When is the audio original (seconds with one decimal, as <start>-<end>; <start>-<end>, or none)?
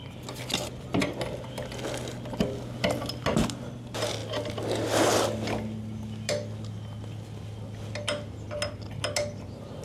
0.0-9.8